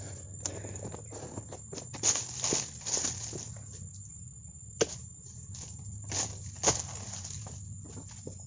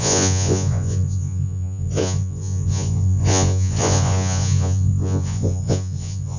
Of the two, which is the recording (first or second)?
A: first